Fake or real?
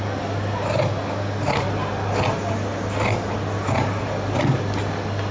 real